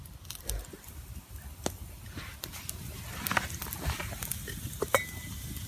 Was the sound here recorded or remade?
recorded